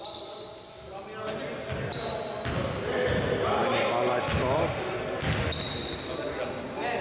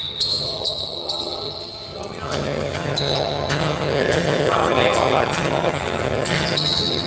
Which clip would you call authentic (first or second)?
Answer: first